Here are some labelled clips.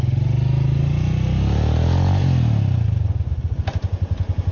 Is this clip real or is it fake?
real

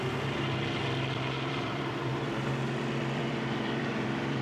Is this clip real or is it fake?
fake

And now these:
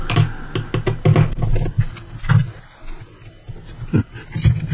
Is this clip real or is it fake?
real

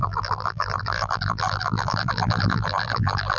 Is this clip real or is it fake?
fake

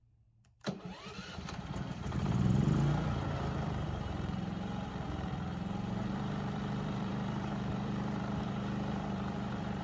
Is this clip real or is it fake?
fake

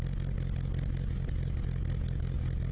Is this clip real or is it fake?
real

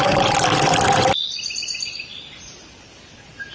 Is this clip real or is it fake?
fake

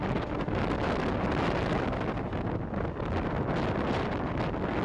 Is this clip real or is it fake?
real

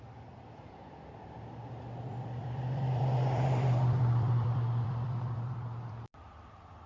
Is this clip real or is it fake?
fake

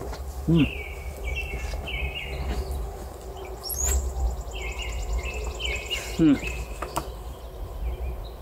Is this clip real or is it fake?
real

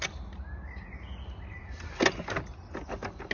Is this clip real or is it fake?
real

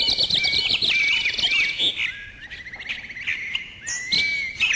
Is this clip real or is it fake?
real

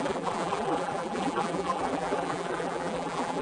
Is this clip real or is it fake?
fake